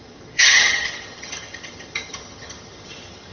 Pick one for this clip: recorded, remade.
remade